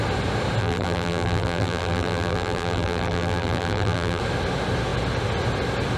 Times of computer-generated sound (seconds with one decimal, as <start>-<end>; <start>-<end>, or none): 0.6-4.2